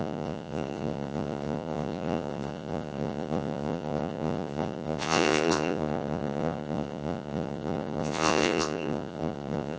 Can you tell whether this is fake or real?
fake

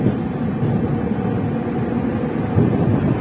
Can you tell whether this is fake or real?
real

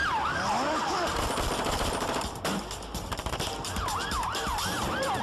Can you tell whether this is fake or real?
fake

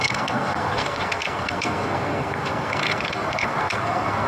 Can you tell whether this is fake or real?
fake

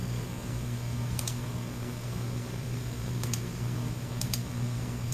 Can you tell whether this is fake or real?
fake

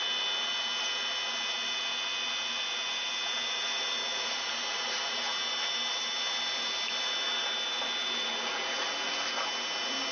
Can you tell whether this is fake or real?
real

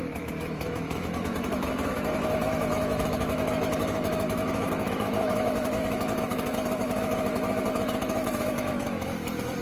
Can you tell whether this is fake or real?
fake